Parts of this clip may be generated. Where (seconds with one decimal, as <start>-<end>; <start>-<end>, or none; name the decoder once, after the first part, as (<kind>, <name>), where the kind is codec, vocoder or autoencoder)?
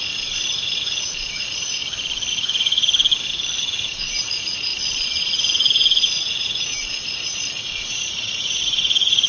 0.0-1.8 (vocoder, Vocos); 2.3-2.9; 3.6-4.7; 5.3-9.3